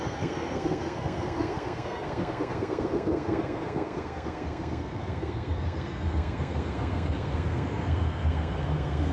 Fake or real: fake